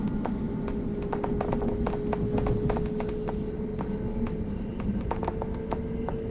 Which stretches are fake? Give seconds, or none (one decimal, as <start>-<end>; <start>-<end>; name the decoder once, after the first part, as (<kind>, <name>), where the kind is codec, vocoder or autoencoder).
none